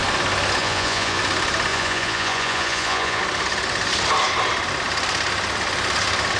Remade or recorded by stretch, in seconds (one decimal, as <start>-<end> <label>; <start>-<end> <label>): 0.0-0.6 recorded; 0.6-1.2 remade; 1.2-1.7 recorded; 1.7-3.2 remade; 3.2-6.4 recorded